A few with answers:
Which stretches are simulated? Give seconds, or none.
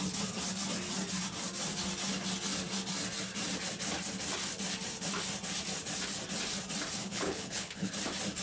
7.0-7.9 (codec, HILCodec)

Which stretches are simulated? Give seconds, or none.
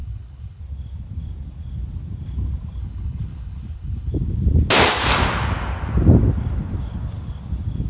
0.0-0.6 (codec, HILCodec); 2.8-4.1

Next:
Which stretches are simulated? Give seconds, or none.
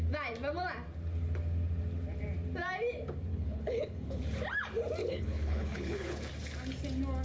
3.3-4.2 (codec, HILCodec); 5.0-6.3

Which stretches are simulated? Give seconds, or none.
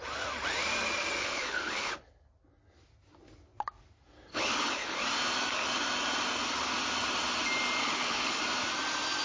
1.2-1.9 (codec, HILCodec); 4.3-5.0; 7.8-8.4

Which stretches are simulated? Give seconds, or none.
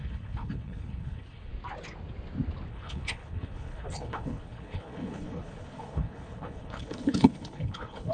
0.0-1.5 (codec, HILCodec); 2.7-8.1